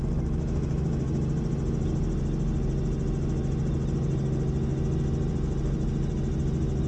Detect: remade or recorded recorded